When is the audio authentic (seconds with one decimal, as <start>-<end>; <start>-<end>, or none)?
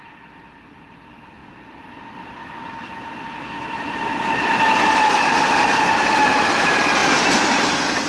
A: 0.0-8.1